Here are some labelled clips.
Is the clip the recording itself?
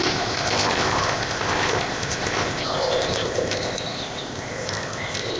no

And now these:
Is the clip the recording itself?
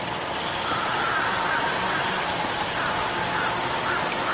yes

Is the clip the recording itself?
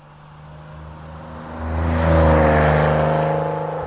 yes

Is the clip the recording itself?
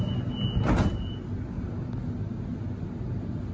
yes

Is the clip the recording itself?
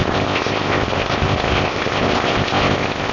no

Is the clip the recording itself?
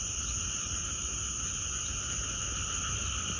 yes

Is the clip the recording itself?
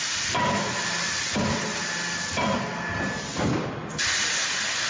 yes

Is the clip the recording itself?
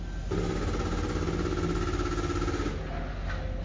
yes